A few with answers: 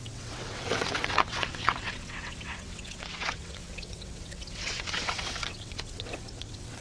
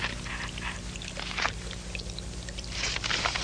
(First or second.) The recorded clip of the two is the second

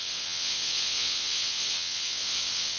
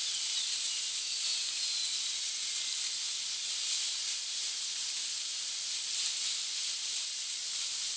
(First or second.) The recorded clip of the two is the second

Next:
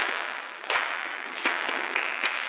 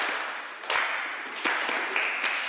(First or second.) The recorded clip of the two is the second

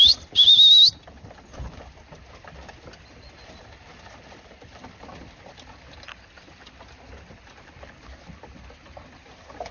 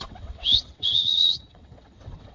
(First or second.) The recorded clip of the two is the first